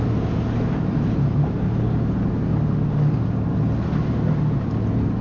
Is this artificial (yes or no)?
no